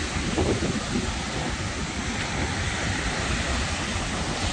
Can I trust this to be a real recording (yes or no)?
yes